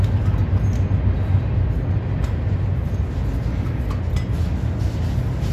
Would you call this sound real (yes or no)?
yes